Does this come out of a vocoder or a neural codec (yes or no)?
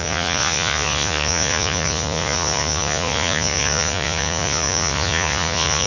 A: yes